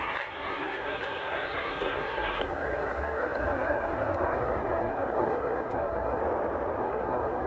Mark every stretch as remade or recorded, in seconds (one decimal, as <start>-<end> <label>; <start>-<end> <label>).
0.0-6.2 remade; 6.2-6.8 recorded; 6.8-7.5 remade